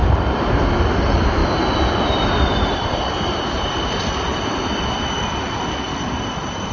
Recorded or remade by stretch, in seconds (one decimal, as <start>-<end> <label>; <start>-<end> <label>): 0.0-0.6 remade; 0.6-6.7 recorded